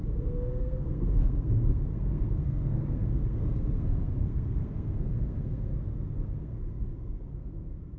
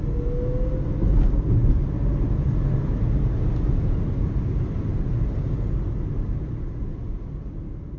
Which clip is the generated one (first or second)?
first